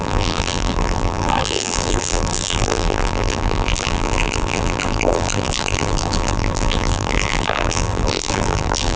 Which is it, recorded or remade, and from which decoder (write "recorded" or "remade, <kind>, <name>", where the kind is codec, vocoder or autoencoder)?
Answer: remade, vocoder, BigVGAN v2